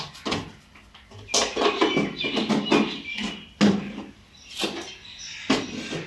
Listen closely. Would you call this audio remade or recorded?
recorded